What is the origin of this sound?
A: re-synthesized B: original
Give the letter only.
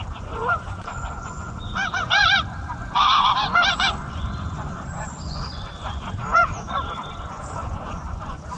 A